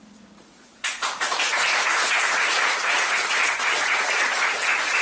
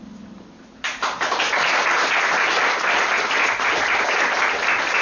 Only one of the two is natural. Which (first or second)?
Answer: second